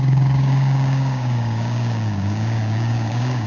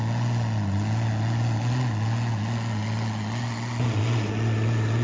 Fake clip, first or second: first